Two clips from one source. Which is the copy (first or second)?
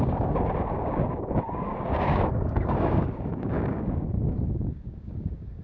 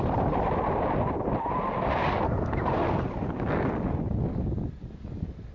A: first